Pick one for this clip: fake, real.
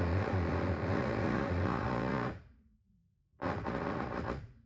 fake